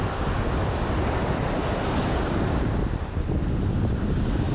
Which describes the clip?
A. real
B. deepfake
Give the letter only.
A